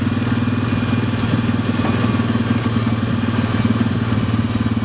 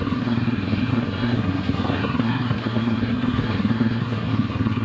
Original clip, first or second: first